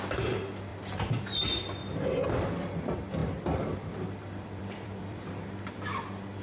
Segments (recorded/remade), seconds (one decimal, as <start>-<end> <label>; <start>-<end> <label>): 0.0-0.7 recorded; 0.7-1.2 remade; 1.2-1.8 recorded; 1.8-2.3 remade; 2.3-3.2 recorded; 3.2-5.3 remade; 5.3-6.4 recorded